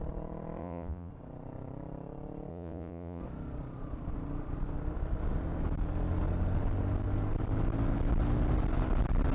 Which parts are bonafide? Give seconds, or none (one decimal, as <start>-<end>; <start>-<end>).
0.0-0.6; 1.1-2.5; 3.2-9.3